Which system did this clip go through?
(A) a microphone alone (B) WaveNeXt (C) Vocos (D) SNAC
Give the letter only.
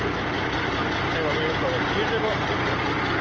A